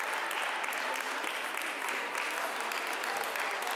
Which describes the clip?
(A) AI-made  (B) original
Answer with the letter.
B